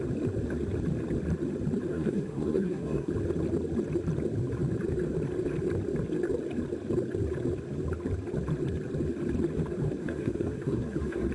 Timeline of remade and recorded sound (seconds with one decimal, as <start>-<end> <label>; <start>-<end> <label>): 0.0-1.9 recorded; 1.9-3.1 remade; 3.1-10.0 recorded; 10.0-11.3 remade